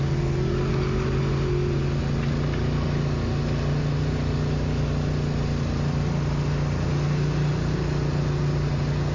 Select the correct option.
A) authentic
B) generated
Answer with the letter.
A